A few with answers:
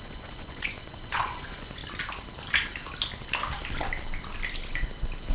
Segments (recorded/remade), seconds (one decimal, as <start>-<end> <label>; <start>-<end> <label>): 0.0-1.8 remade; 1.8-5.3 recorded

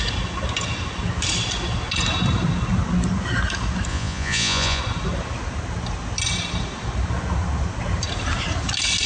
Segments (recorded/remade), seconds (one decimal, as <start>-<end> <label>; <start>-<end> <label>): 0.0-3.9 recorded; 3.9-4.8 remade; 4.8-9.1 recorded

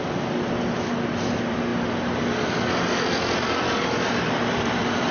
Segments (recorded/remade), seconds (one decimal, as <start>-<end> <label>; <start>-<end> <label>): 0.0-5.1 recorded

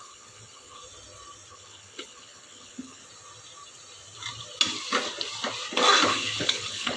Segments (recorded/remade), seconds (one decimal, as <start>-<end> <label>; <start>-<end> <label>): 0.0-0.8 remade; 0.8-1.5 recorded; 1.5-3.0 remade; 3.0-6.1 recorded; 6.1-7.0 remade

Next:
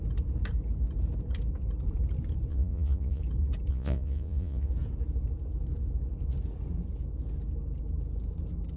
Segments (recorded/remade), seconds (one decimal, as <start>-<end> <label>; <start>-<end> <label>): 0.0-2.5 recorded; 2.5-3.2 remade; 3.2-3.7 recorded; 3.7-4.7 remade; 4.7-8.8 recorded

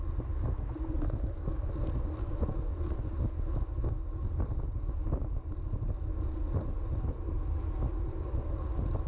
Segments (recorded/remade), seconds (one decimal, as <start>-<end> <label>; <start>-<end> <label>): 0.0-9.1 recorded

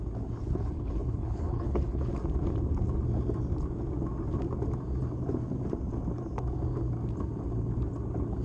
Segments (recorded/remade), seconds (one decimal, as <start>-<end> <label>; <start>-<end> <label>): 0.0-0.4 recorded; 0.4-2.1 remade; 2.1-8.4 recorded

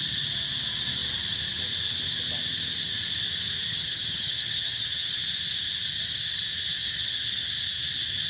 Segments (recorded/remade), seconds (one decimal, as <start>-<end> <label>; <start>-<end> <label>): 0.0-3.7 recorded; 3.7-5.2 remade; 5.2-6.8 recorded; 6.8-7.5 remade; 7.5-8.3 recorded